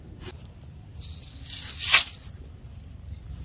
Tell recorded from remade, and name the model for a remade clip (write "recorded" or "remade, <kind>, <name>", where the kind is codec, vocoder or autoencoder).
recorded